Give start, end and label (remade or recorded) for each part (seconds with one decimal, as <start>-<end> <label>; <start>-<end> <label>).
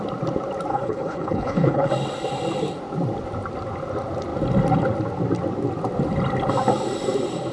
0.0-0.7 recorded; 0.7-1.9 remade; 1.9-7.5 recorded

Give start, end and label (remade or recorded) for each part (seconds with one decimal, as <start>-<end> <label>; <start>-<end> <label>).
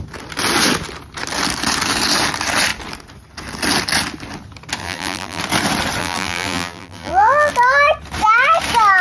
0.0-4.8 recorded; 4.8-5.4 remade; 5.4-6.0 recorded; 6.0-7.5 remade; 7.5-9.0 recorded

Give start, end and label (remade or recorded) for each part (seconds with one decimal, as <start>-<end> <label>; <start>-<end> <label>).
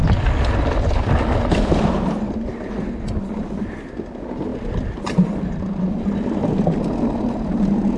0.0-4.5 recorded; 4.5-5.8 remade; 5.8-8.0 recorded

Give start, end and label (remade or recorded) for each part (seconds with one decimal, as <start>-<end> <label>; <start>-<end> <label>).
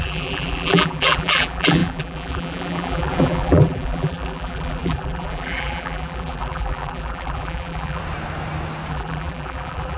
0.0-8.0 remade; 8.0-8.9 recorded; 8.9-10.0 remade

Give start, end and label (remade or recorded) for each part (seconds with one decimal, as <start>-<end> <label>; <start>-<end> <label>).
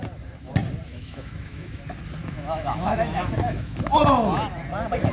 0.0-0.9 recorded; 0.9-1.8 remade; 1.8-2.2 recorded; 2.2-3.9 remade; 3.9-5.1 recorded